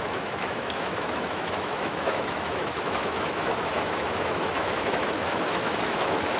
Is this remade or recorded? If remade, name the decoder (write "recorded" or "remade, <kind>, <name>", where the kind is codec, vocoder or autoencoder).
remade, autoencoder, DAC-VAE